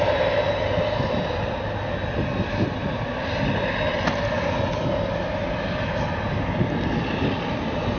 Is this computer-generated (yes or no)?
no